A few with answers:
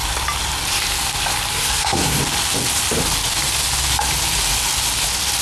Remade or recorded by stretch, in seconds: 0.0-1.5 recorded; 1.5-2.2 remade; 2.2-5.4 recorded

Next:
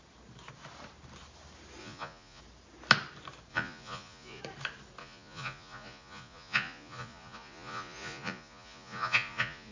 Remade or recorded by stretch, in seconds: 0.0-1.8 recorded; 1.8-2.4 remade; 2.4-3.5 recorded; 3.5-4.4 remade; 4.4-5.0 recorded; 5.0-9.7 remade

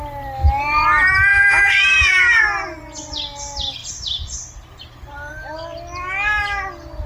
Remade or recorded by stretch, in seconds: 0.0-1.3 recorded; 1.3-2.4 remade; 2.4-7.1 recorded

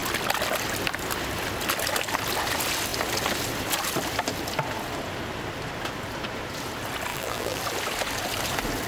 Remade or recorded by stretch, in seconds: 0.0-7.1 recorded; 7.1-7.6 remade; 7.6-8.9 recorded

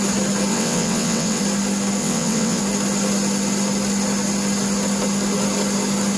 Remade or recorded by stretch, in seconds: 0.0-0.5 recorded; 0.5-1.4 remade; 1.4-2.0 recorded; 2.0-2.6 remade; 2.6-6.2 recorded

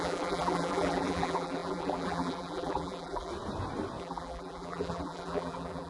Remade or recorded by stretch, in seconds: 0.0-3.3 remade; 3.3-4.0 recorded; 4.0-5.9 remade

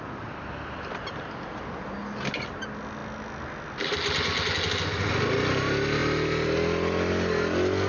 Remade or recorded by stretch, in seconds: 0.0-7.9 recorded